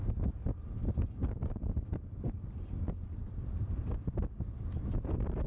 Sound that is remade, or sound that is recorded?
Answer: recorded